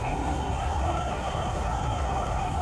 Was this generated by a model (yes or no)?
yes